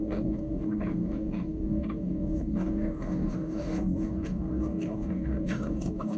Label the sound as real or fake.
fake